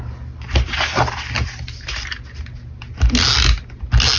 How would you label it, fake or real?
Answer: real